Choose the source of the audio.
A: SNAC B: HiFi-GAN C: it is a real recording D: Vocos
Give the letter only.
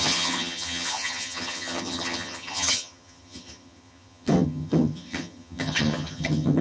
B